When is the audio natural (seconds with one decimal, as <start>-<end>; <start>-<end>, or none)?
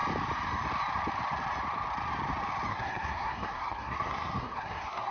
0.0-2.7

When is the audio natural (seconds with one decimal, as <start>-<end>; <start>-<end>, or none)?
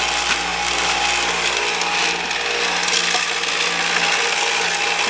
0.0-5.1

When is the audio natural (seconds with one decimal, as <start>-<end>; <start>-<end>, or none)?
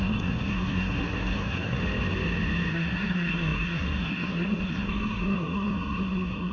1.8-2.7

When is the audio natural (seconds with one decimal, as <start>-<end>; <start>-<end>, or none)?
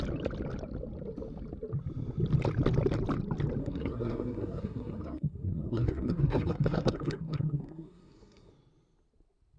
0.0-3.6; 8.5-9.6